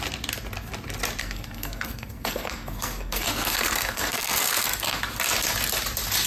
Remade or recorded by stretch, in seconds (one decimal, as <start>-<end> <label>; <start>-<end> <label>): 0.0-1.2 recorded; 1.2-5.0 remade; 5.0-6.3 recorded